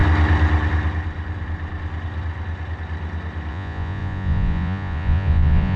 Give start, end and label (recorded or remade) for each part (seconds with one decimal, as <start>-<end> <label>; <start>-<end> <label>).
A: 0.0-3.5 recorded; 3.5-5.8 remade